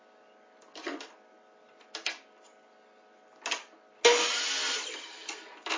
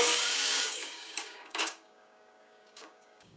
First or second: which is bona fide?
first